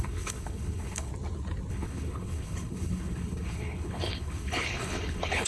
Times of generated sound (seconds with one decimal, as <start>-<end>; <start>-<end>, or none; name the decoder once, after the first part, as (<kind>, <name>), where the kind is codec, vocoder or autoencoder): 0.0-1.1 (codec, HILCodec); 1.7-5.5